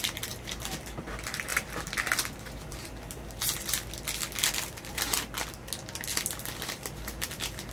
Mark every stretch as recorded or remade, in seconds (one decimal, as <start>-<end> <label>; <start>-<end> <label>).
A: 0.0-7.7 recorded